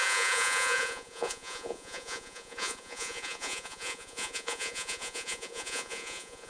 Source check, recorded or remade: remade